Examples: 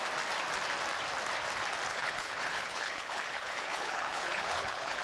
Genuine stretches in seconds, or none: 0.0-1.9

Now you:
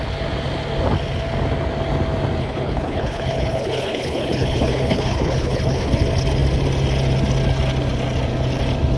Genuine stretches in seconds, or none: 0.0-2.4; 5.9-9.0

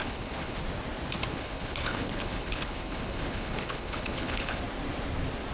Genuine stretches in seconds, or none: 0.6-1.3; 4.6-5.5

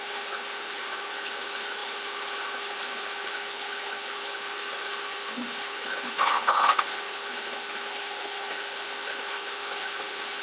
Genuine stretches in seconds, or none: none

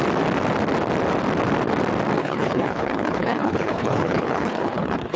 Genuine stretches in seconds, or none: 0.0-2.2

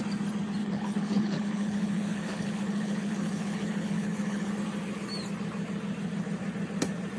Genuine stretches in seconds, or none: 0.0-0.6; 4.5-7.2

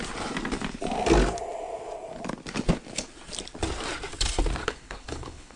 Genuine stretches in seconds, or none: 0.0-4.6

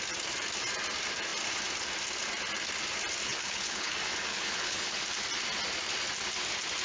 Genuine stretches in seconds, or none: 0.0-3.2; 3.9-4.3; 5.0-6.8